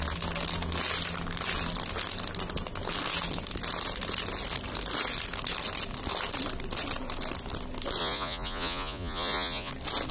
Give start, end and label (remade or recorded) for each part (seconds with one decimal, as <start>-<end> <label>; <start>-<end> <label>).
0.0-8.0 recorded; 8.0-9.7 remade; 9.7-10.1 recorded